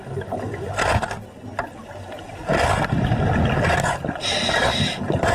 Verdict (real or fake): real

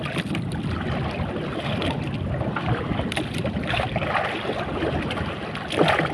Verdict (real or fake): real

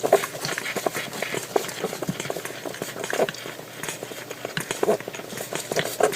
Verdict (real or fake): real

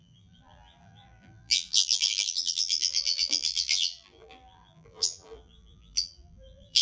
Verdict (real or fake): fake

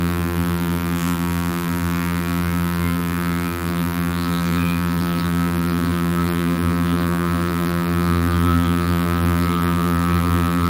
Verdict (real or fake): fake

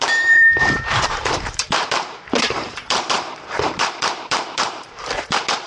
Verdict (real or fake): fake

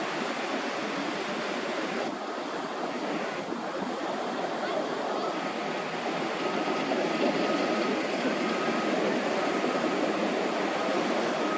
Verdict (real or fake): real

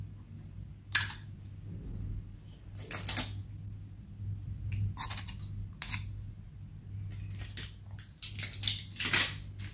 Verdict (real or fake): real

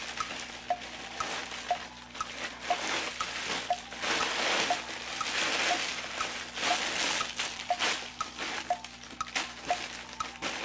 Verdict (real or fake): real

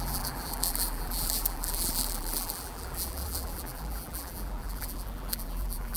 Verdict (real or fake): fake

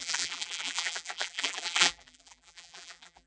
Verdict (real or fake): fake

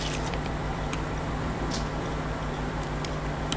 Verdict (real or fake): fake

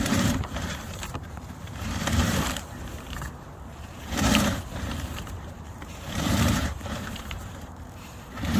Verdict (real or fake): fake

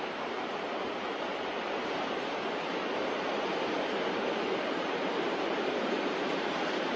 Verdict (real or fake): fake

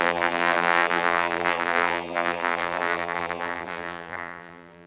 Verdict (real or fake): fake